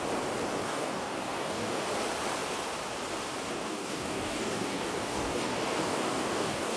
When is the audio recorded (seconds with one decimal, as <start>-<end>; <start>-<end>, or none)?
0.0-0.6; 1.9-3.5